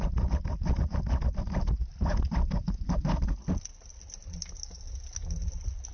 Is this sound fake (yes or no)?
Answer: no